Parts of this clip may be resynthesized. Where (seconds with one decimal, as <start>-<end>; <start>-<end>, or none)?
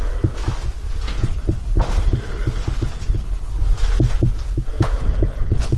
1.2-3.5; 5.0-5.8